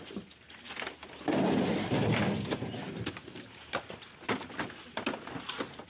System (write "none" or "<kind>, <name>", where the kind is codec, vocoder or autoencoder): none